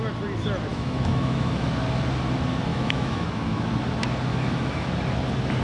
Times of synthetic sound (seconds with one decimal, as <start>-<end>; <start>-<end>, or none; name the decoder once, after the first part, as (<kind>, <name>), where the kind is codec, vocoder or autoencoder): 0.7-1.7 (autoencoder, DAC-VAE); 2.7-3.7; 4.3-4.9